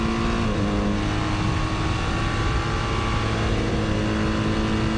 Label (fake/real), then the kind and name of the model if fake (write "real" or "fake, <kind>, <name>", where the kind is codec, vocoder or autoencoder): real